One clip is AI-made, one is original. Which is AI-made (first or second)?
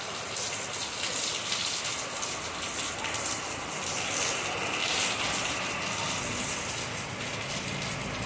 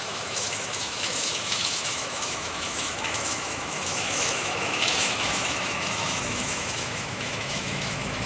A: second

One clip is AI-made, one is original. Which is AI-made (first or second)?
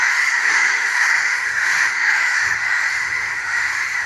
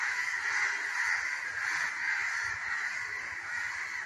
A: first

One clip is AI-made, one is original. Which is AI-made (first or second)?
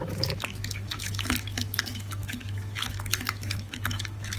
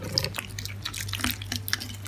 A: first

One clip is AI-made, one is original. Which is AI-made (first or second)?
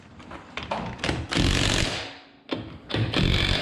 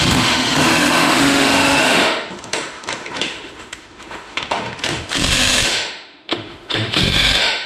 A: second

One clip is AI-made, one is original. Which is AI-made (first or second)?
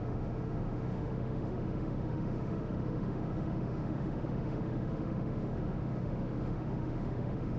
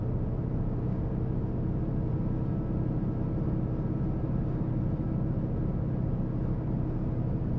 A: first